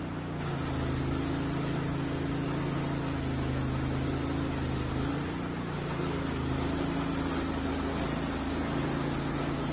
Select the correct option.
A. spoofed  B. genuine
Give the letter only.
B